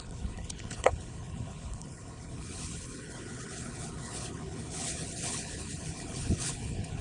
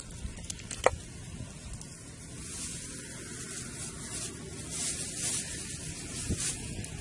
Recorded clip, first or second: second